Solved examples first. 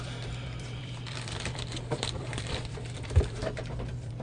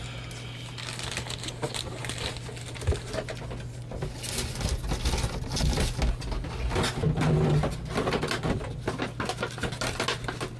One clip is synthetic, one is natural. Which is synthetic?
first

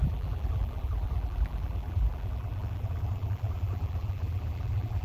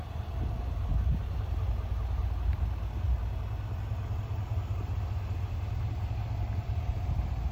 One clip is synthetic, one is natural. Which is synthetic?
first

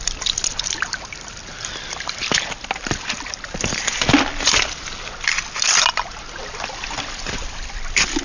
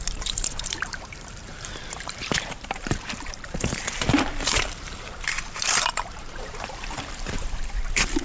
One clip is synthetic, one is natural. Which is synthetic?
second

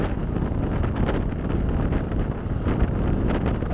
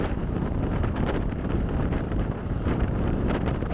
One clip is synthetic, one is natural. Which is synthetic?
second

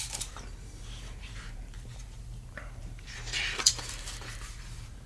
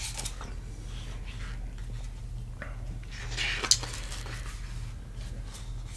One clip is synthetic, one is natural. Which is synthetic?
first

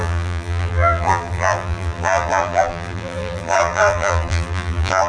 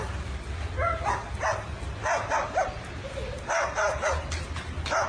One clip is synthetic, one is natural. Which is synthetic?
first